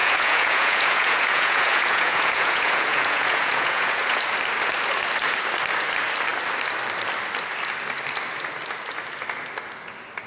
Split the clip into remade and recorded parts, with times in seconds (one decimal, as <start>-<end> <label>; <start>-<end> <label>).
0.0-4.2 remade; 4.2-10.3 recorded